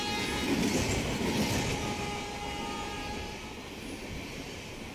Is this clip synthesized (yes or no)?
no